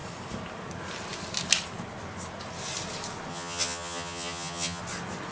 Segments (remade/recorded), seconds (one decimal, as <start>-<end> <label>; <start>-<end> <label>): 0.0-3.3 recorded; 3.3-4.8 remade; 4.8-5.3 recorded